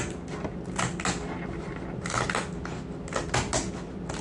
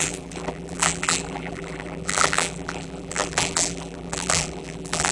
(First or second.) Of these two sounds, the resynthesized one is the second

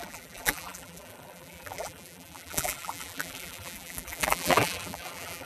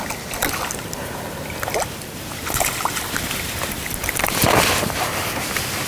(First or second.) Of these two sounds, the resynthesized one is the first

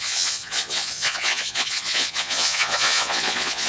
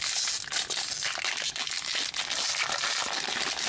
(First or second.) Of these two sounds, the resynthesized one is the first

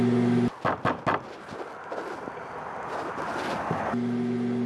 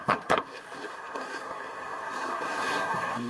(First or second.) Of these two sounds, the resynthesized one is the second